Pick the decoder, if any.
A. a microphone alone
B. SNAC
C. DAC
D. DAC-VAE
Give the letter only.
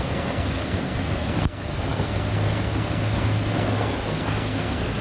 B